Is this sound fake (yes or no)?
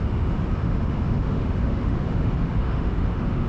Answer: yes